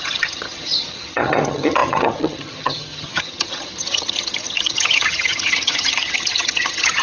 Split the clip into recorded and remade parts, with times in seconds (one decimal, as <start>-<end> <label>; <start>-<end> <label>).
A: 0.0-7.0 remade